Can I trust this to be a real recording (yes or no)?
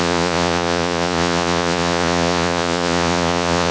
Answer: no